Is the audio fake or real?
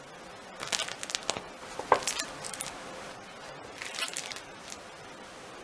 real